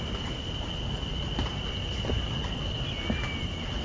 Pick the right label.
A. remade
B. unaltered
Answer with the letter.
B